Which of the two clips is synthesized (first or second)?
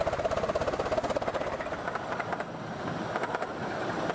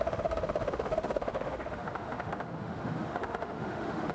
second